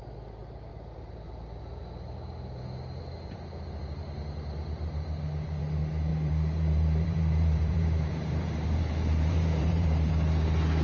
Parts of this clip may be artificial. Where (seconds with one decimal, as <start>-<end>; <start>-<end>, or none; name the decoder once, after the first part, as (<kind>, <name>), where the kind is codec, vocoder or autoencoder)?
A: 0.7-1.6 (vocoder, BigVGAN v2); 6.1-10.1